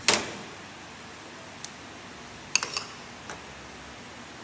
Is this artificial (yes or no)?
no